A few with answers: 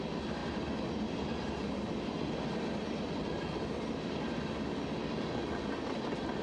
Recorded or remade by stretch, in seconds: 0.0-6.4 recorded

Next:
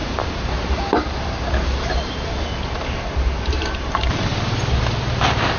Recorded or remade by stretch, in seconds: 0.0-4.3 remade; 4.3-5.6 recorded

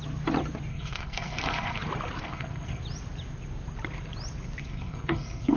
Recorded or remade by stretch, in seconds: 0.0-0.7 recorded; 0.7-1.8 remade; 1.8-2.2 recorded; 2.2-2.8 remade; 2.8-4.6 recorded; 4.6-5.6 remade